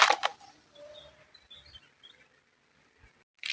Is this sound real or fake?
real